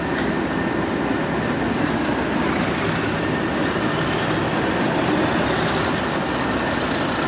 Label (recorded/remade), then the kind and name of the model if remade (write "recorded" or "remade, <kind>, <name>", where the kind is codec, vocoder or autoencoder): recorded